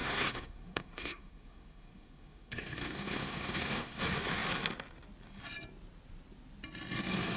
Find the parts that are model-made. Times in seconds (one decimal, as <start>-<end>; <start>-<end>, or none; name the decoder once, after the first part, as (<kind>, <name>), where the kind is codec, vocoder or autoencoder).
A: 0.0-4.0 (codec, SNAC)